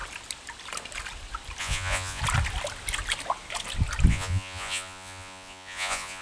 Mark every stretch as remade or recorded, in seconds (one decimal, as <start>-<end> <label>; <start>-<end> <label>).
0.0-1.6 recorded; 1.6-2.2 remade; 2.2-4.1 recorded; 4.1-6.2 remade